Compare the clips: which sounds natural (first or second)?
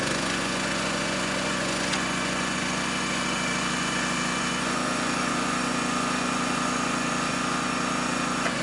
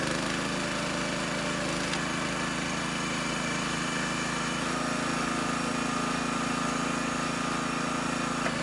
second